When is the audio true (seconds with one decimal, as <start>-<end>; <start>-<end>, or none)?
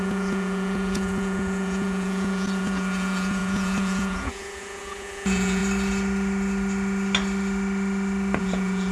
5.6-8.4